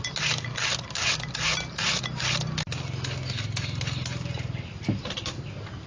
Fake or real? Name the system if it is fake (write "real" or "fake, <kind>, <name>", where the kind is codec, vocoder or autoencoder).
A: real